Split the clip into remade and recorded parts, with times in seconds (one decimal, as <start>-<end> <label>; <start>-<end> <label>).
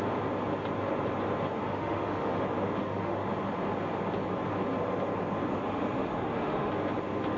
0.0-1.7 recorded; 1.7-2.4 remade; 2.4-2.8 recorded; 2.8-3.3 remade; 3.3-5.5 recorded; 5.5-6.7 remade; 6.7-7.4 recorded